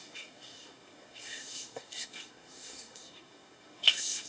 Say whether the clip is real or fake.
fake